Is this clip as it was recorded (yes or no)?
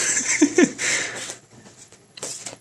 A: no